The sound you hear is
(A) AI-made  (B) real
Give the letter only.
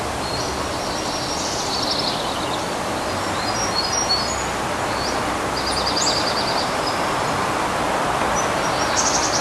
B